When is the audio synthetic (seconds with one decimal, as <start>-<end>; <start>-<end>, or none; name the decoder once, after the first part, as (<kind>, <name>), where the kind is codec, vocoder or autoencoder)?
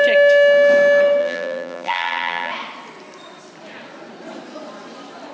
1.2-2.5 (vocoder, BigVGAN v2)